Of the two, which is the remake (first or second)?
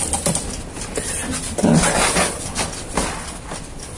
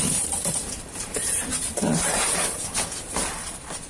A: second